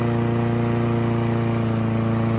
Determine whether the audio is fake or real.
real